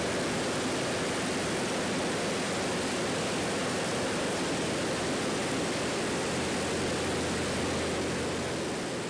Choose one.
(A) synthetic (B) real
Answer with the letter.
B